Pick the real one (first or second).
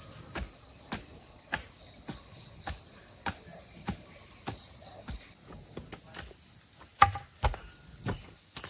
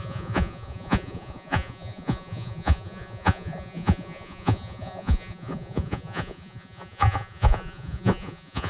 first